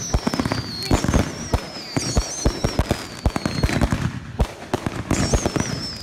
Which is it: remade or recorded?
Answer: recorded